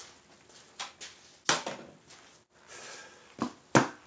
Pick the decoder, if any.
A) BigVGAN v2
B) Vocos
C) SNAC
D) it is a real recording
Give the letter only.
D